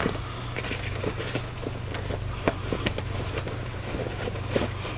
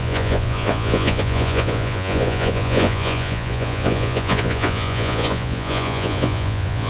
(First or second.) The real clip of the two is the first